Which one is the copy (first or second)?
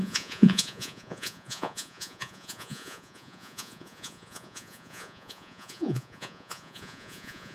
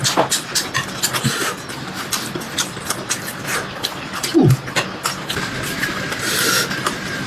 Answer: first